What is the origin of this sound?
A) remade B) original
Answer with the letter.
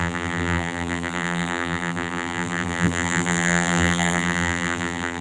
A